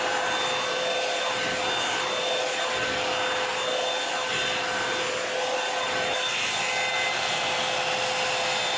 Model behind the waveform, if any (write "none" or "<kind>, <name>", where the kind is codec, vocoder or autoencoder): none